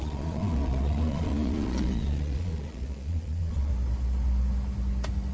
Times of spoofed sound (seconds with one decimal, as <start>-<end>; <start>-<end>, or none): 0.0-3.7